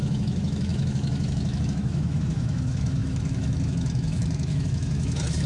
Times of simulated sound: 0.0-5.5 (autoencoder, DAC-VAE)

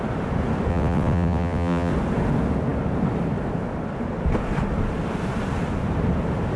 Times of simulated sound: 0.7-1.9 (vocoder, WaveNeXt)

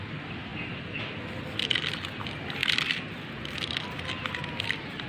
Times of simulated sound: none

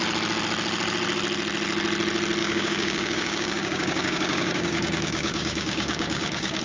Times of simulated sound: 2.4-6.6 (codec, DAC)

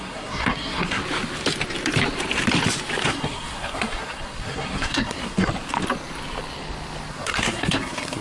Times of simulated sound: 0.0-1.0 (codec, SNAC); 3.1-5.5; 7.1-8.2

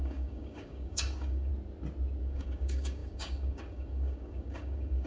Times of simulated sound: 0.0-1.5 (codec, DAC); 2.2-5.1